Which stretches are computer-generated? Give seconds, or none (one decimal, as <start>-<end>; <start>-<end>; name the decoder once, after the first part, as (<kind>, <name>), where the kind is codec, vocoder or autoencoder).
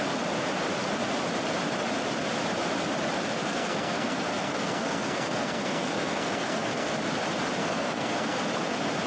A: 3.4-6.9 (codec, SNAC); 7.6-8.4